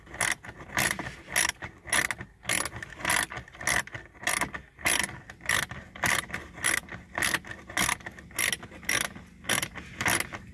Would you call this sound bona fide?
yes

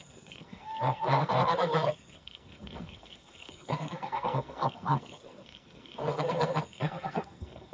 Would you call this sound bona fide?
no